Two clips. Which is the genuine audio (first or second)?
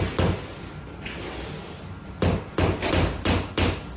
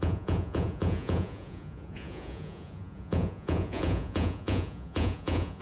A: first